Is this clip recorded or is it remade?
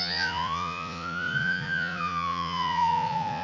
remade